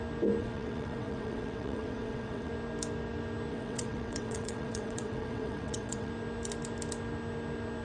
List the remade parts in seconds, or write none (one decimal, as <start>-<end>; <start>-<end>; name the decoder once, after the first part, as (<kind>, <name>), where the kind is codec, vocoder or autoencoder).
0.4-2.5 (vocoder, WaveNeXt); 3.5-6.1